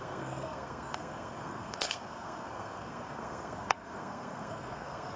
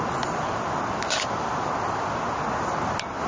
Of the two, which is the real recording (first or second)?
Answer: second